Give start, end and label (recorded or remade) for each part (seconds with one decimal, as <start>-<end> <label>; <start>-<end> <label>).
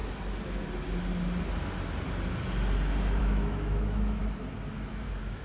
0.0-3.2 recorded; 3.2-4.2 remade; 4.2-4.9 recorded; 4.9-5.4 remade